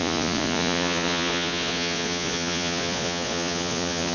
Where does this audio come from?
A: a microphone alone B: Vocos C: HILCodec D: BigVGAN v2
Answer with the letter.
B